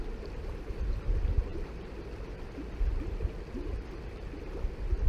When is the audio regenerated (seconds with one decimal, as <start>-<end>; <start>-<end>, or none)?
none